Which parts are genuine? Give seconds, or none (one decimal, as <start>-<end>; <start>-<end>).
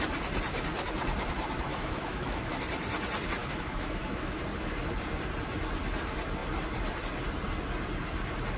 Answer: 0.0-1.7; 2.6-3.4; 4.4-8.6